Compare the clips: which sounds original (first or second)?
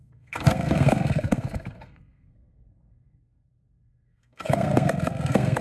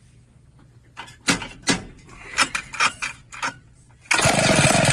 second